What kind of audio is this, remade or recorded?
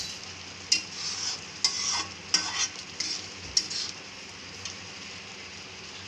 recorded